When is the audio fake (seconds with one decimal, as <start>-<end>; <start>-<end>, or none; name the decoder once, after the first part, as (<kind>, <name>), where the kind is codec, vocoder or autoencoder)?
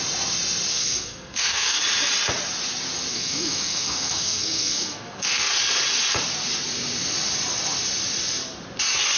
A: 0.7-1.8 (codec, SNAC); 3.1-5.5